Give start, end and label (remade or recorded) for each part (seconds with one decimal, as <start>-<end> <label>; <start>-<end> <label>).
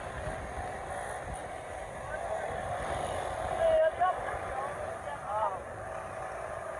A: 0.0-6.8 recorded